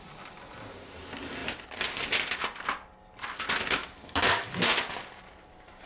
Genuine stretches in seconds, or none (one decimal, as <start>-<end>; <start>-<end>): 0.0-5.9